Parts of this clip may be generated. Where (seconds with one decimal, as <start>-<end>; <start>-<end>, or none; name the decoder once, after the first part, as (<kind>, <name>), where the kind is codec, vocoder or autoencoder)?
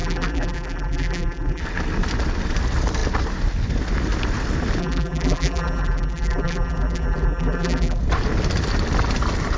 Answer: 0.0-1.6 (vocoder, BigVGAN v2); 4.8-8.0